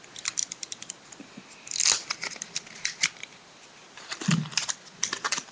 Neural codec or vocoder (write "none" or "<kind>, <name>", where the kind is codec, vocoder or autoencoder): none